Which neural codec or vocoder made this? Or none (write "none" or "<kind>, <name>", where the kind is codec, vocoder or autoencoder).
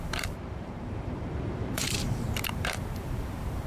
vocoder, BigVGAN v2